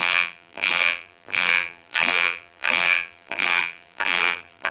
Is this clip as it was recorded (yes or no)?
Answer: no